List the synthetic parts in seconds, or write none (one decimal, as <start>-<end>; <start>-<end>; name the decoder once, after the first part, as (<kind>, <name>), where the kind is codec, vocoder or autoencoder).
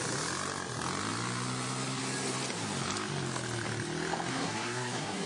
4.3-5.3 (codec, SNAC)